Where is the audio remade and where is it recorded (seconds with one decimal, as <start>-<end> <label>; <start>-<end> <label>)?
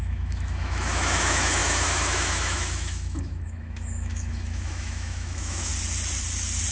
0.0-5.7 remade; 5.7-6.7 recorded